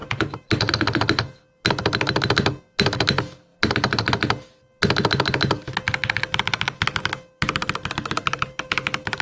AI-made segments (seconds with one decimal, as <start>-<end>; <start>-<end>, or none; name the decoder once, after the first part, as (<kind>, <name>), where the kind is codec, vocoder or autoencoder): 0.0-0.7 (vocoder, BigVGAN v2)